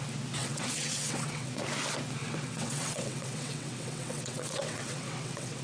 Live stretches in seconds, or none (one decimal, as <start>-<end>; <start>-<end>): 0.0-0.4; 1.5-2.2